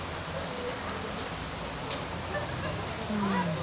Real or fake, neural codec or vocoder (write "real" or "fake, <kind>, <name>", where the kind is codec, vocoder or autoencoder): real